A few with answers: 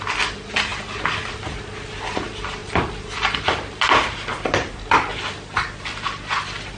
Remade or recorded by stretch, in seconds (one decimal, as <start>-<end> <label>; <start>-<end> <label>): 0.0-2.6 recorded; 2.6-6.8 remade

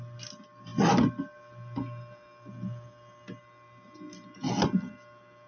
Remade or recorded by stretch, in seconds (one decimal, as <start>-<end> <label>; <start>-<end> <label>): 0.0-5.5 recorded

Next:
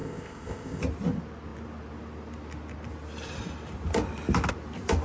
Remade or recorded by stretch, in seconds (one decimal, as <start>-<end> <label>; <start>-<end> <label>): 0.0-0.8 remade; 0.8-5.0 recorded

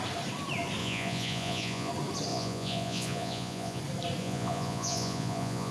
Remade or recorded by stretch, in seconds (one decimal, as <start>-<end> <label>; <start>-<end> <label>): 0.0-0.8 recorded; 0.8-1.9 remade; 1.9-2.3 recorded; 2.3-3.8 remade; 3.8-4.2 recorded; 4.2-5.7 remade

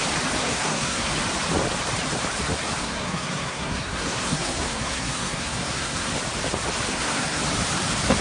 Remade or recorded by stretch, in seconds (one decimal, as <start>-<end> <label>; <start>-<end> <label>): 0.0-0.4 recorded; 0.4-1.1 remade; 1.1-2.8 recorded; 2.8-6.1 remade; 6.1-6.9 recorded; 6.9-7.4 remade; 7.4-8.2 recorded